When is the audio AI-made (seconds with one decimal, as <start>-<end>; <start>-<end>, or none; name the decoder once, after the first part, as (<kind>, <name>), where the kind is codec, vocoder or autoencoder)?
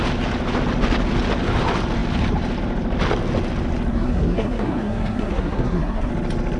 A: 3.9-6.1 (codec, SNAC)